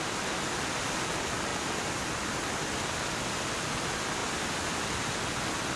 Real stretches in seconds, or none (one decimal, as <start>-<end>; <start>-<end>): 0.0-5.8